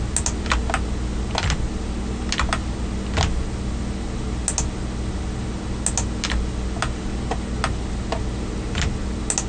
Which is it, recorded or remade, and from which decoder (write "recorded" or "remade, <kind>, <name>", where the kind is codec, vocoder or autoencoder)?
recorded